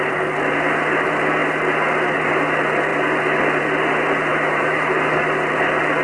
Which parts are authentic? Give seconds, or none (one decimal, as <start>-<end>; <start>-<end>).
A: 0.0-4.3; 4.9-6.0